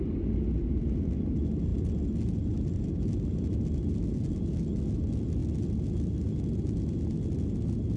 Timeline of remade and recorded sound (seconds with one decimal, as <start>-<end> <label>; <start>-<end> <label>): 0.0-8.0 recorded

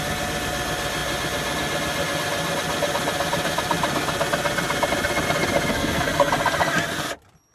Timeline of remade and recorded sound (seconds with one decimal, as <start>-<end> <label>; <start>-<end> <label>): 0.0-5.7 recorded; 5.7-6.3 remade; 6.3-7.5 recorded